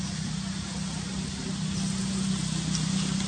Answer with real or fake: real